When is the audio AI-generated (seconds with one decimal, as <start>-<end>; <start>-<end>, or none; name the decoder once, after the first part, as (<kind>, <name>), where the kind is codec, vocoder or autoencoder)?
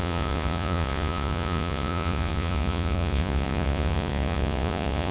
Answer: 0.0-5.1 (vocoder, Vocos)